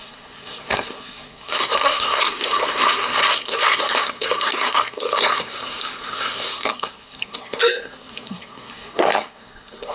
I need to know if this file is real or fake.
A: fake